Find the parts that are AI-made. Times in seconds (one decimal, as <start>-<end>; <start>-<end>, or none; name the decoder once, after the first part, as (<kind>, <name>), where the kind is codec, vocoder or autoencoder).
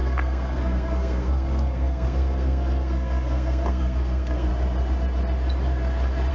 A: 0.0-4.5 (codec, SNAC)